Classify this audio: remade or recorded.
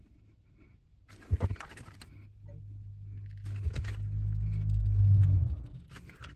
recorded